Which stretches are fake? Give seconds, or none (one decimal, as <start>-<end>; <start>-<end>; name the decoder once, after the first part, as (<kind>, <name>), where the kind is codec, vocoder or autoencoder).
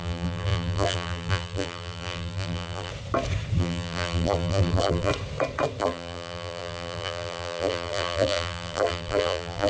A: 0.0-2.9 (vocoder, BigVGAN v2); 3.6-5.1; 5.8-9.7